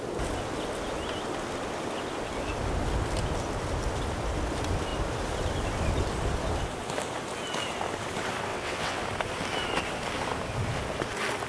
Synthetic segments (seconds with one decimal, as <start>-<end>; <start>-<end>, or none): 8.5-9.0